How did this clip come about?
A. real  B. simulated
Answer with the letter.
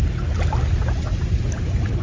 A